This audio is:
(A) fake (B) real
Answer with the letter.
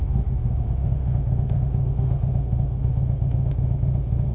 A